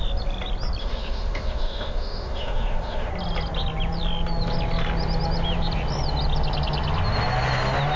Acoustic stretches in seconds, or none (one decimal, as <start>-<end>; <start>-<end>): 0.0-0.8; 3.1-8.0